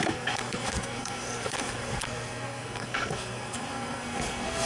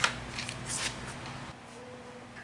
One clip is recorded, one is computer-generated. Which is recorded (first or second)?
second